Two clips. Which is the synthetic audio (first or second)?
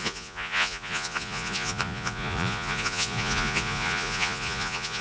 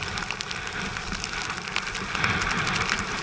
first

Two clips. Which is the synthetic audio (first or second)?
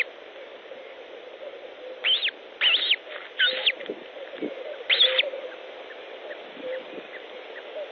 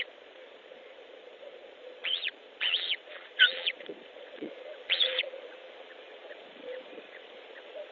second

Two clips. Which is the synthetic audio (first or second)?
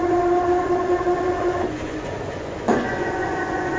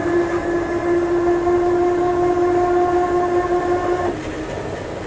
first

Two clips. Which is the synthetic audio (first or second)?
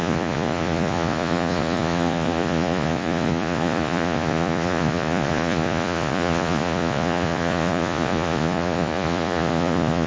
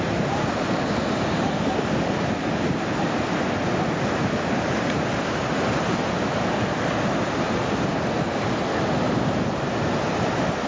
first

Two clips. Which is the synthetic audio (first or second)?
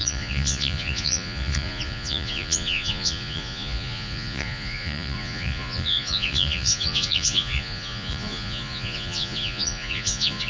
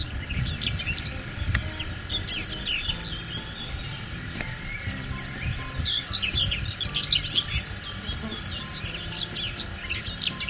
first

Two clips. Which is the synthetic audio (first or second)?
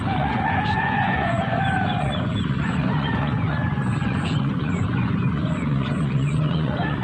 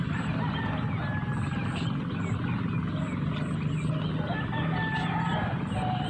first